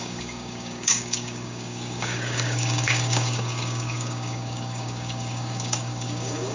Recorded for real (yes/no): no